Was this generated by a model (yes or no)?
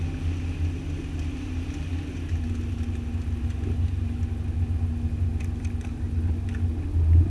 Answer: no